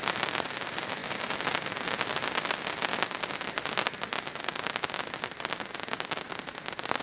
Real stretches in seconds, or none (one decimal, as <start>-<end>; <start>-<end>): 0.0-7.0